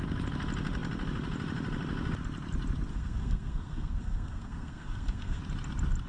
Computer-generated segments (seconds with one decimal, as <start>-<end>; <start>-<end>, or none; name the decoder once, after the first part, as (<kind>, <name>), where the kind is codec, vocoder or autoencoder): 2.9-5.4 (codec, SNAC)